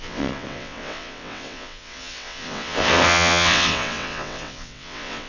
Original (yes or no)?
no